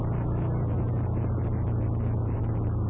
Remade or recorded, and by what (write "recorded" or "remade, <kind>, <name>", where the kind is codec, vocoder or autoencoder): recorded